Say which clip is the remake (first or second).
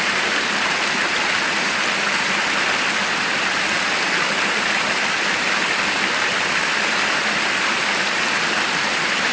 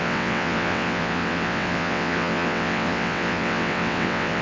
second